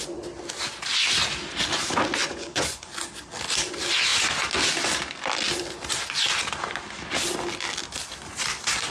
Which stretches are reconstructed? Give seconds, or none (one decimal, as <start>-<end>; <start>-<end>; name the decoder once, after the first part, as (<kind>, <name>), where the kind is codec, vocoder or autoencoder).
2.2-2.9 (vocoder, Vocos)

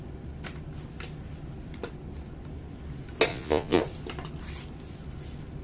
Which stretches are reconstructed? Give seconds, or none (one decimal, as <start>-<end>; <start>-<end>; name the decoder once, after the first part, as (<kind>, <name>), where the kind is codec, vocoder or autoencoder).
3.3-3.8 (vocoder, Vocos)

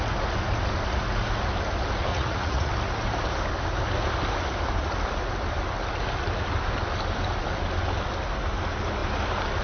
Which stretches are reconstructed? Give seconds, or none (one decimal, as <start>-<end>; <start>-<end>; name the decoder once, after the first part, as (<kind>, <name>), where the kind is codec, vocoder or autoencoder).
2.1-2.7 (vocoder, Vocos)